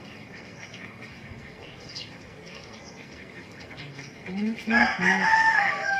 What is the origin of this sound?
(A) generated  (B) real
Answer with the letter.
A